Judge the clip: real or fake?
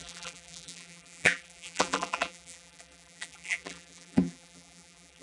fake